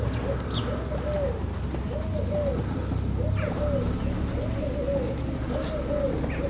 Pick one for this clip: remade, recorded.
recorded